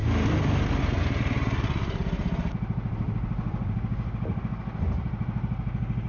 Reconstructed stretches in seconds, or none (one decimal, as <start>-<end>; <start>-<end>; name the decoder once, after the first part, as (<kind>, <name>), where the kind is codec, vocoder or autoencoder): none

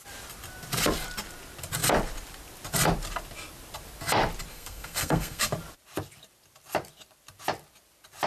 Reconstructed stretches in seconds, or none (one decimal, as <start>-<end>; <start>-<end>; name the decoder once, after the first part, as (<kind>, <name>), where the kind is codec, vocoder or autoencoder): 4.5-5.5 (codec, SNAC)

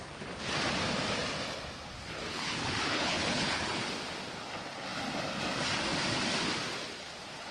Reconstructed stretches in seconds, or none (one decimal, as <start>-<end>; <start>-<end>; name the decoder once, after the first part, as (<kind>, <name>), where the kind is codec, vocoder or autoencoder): 2.3-3.9 (codec, HILCodec)